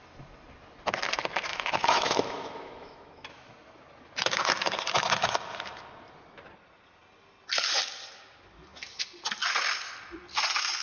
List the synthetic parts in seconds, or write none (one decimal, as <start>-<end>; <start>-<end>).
1.5-3.5